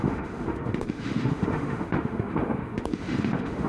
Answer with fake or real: fake